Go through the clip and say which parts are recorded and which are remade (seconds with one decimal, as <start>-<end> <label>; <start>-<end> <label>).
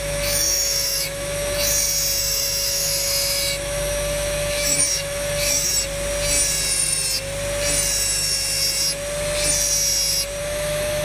0.0-1.7 remade; 1.7-2.2 recorded; 2.2-5.7 remade; 5.7-10.4 recorded; 10.4-11.0 remade